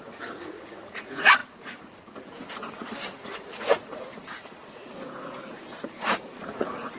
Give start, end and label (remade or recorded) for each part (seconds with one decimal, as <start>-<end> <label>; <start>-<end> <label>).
0.0-7.0 remade